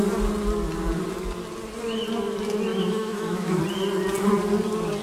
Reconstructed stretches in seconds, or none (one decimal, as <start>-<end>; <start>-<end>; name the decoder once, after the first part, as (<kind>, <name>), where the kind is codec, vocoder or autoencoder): 2.7-3.6 (autoencoder, DAC-VAE)